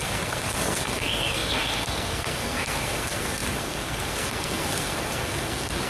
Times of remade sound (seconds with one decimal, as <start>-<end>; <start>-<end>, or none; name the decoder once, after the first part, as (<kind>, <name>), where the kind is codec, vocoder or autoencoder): 0.0-5.9 (codec, SNAC)